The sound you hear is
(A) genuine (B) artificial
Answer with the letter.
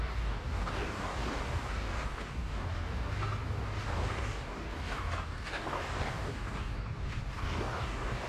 B